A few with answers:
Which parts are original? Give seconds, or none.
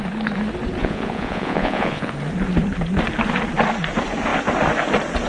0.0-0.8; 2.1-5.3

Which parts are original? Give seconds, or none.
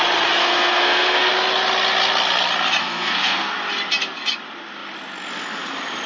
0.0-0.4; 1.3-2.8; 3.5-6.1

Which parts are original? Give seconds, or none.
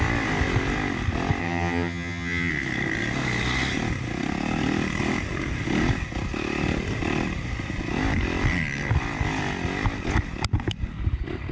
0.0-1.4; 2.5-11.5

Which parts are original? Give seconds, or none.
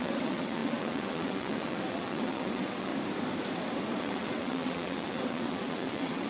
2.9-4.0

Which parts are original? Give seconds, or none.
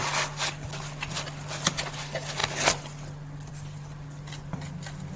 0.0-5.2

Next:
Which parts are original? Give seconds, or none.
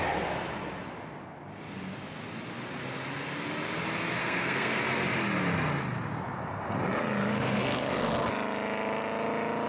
0.0-4.2; 4.8-7.3; 8.3-9.7